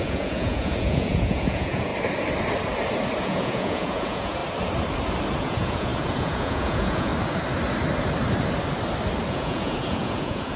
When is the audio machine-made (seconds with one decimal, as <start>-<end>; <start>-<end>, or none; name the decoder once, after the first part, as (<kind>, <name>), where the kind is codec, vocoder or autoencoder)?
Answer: 0.0-1.9 (vocoder, Vocos); 3.2-4.4; 5.4-7.1; 9.3-10.6